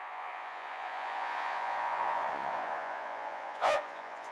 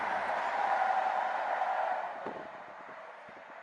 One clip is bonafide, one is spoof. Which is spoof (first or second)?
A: first